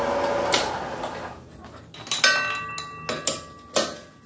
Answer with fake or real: real